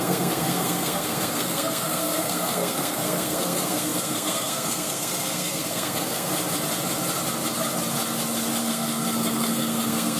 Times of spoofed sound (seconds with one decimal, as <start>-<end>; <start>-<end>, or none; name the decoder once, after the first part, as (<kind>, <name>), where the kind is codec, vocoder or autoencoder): 0.0-6.3 (codec, SNAC); 8.6-10.2